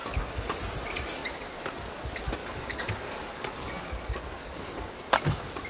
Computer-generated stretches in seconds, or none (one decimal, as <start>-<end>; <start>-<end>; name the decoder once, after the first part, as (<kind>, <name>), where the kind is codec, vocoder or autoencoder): 0.0-0.6 (codec, DAC); 2.4-4.9

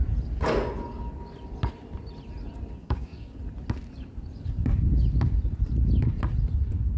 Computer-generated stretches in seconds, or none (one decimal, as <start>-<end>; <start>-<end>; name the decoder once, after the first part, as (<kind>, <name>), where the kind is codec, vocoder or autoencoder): 2.8-3.4 (codec, DAC)

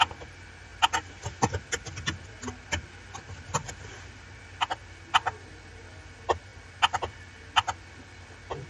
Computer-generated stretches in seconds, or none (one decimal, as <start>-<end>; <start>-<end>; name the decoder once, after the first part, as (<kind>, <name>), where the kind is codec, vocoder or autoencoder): none